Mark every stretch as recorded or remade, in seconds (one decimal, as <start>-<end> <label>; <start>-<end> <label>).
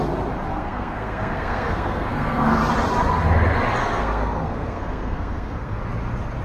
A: 0.0-0.5 recorded; 0.5-2.6 remade; 2.6-3.8 recorded; 3.8-5.8 remade; 5.8-6.4 recorded